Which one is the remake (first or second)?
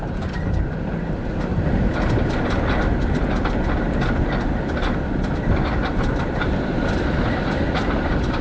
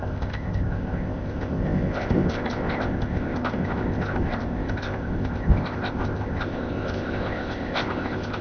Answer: second